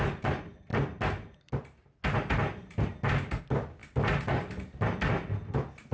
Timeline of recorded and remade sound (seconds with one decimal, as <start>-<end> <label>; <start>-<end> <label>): 0.0-5.9 recorded